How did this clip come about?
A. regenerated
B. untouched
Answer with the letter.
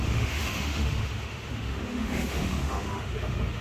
A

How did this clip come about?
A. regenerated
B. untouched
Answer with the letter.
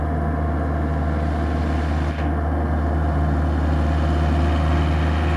B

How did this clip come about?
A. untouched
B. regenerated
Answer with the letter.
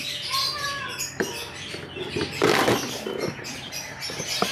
A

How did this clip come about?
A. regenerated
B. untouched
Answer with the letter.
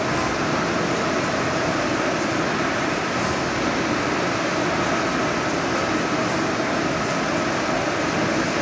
B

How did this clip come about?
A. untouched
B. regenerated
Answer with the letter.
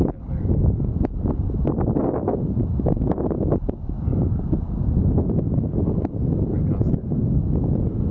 A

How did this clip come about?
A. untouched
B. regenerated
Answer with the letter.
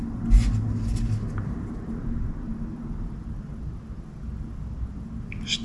A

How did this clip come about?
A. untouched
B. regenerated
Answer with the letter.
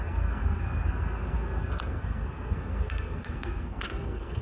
B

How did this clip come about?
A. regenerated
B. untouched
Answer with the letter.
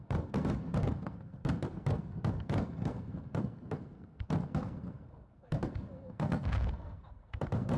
A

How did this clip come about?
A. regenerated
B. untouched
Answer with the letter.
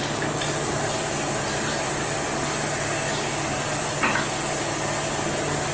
B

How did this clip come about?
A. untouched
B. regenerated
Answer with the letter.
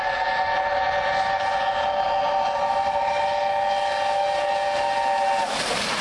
A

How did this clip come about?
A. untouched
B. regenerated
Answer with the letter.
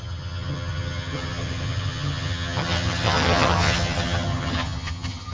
B